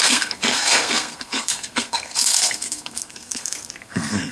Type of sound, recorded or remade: remade